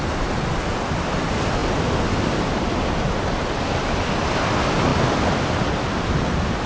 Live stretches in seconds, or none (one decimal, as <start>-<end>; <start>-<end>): 0.0-6.7